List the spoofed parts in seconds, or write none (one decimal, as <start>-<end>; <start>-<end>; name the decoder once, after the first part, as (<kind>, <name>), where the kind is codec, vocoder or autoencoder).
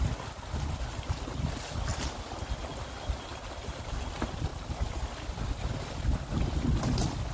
3.3-4.0 (vocoder, BigVGAN v2)